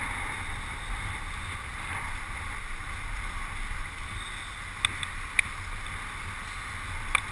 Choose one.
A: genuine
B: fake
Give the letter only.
A